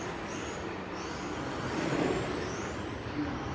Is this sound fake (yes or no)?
no